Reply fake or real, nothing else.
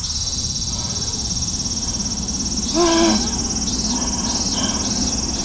real